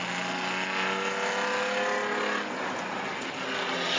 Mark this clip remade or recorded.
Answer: recorded